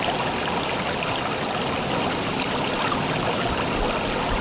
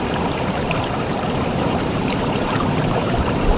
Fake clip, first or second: second